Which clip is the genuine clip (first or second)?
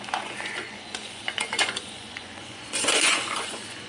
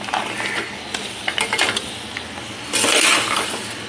second